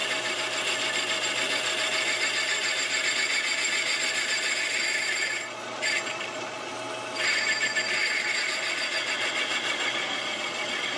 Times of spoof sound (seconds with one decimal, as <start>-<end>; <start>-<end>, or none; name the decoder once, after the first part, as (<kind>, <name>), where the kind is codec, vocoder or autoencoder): 3.1-6.7 (vocoder, Vocos); 8.0-11.0